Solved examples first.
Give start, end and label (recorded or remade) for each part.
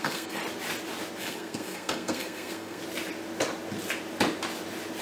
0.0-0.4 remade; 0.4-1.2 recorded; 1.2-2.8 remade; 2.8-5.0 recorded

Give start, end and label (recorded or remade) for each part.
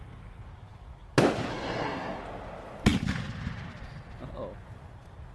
0.0-1.5 recorded; 1.5-2.2 remade; 2.2-5.3 recorded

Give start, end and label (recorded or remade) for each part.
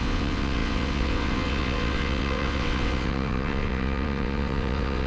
0.0-5.1 remade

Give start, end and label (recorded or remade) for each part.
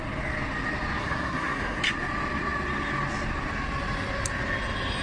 0.0-1.0 recorded; 1.0-1.8 remade; 1.8-5.0 recorded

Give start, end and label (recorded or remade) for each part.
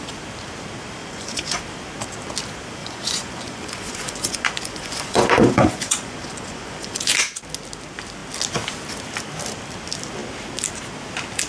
0.0-1.0 recorded; 1.0-1.6 remade; 1.6-2.8 recorded; 2.8-7.1 remade; 7.1-11.5 recorded